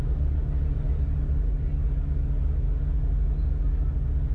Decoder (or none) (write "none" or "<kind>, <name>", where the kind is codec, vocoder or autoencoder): none